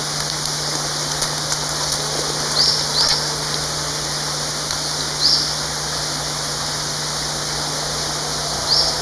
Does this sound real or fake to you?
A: real